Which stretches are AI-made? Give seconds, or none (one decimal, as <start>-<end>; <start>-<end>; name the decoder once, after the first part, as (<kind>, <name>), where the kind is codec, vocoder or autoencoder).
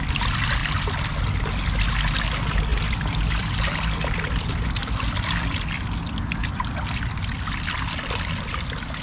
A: 2.7-5.4 (vocoder, BigVGAN v2)